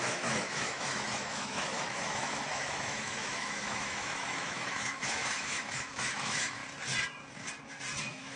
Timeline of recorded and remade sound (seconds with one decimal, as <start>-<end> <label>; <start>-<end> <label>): 0.0-6.6 remade; 6.6-8.0 recorded; 8.0-8.4 remade